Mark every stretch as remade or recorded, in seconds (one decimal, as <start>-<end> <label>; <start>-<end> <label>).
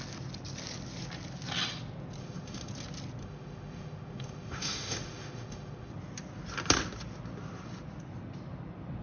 0.0-2.2 recorded; 2.2-2.7 remade; 2.7-3.2 recorded; 3.2-5.9 remade; 5.9-9.0 recorded